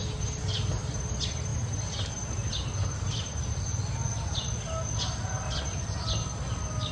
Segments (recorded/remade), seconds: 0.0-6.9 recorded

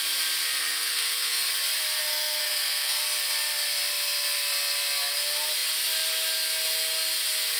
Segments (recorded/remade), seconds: 0.0-0.6 recorded; 0.6-1.5 remade; 1.5-2.0 recorded; 2.0-3.0 remade; 3.0-7.6 recorded

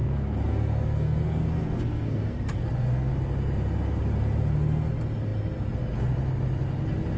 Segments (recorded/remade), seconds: 0.0-3.1 remade; 3.1-7.2 recorded

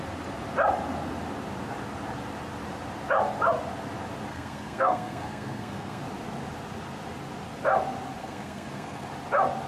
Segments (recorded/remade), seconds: 0.0-4.3 recorded; 4.3-6.0 remade; 6.0-8.2 recorded; 8.2-9.1 remade; 9.1-9.7 recorded

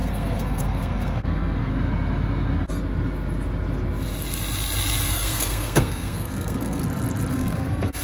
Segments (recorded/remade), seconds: 0.0-1.7 remade; 1.7-5.1 recorded; 5.1-6.8 remade; 6.8-7.3 recorded; 7.3-8.0 remade